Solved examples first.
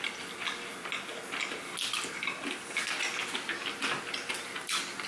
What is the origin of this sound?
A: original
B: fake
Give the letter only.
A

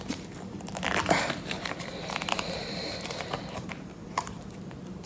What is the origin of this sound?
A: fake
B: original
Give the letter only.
A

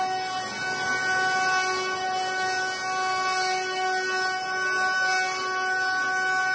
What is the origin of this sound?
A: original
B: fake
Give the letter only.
A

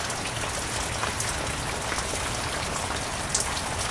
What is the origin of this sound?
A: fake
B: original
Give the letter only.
B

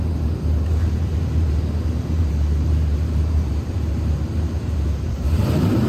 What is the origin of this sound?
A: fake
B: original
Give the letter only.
A